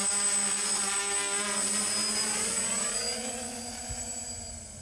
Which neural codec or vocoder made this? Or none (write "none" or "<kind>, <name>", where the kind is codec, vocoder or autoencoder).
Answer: none